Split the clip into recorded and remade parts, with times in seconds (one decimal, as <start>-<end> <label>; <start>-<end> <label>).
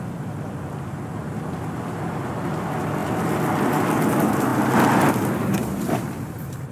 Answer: 0.0-6.7 recorded